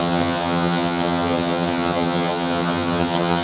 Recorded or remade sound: remade